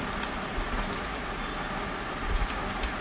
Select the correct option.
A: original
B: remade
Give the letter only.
A